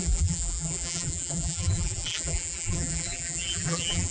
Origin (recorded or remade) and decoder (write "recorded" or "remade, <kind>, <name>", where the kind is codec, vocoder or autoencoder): remade, vocoder, BigVGAN v2